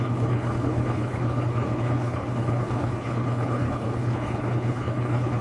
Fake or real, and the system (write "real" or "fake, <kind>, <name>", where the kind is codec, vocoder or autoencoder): fake, codec, HILCodec